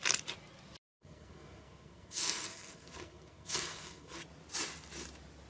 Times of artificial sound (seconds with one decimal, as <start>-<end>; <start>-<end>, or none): 0.9-4.2